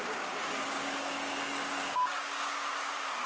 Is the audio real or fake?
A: fake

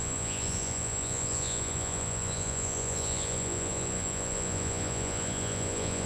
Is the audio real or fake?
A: fake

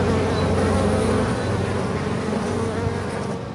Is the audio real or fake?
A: real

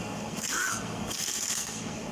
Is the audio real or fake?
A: fake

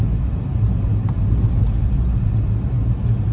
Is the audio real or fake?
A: real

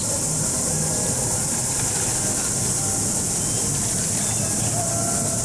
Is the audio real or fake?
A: real